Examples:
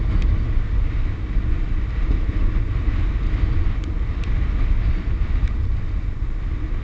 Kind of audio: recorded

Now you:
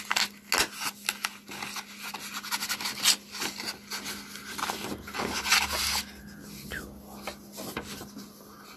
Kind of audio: recorded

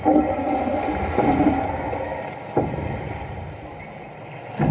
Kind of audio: recorded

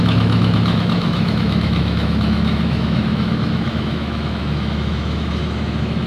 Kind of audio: remade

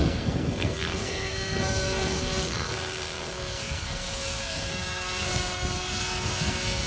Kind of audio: remade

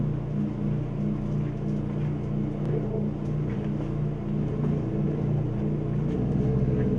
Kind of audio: recorded